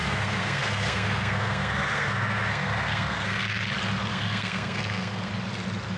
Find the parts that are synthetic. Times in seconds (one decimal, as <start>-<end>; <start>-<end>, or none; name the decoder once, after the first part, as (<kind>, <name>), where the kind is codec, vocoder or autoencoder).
0.0-3.6 (codec, SNAC); 4.1-5.3